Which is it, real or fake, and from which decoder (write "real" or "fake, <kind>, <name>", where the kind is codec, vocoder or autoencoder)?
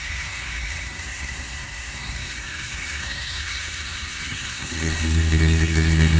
fake, codec, SNAC